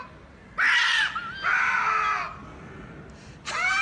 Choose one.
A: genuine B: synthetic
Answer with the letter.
A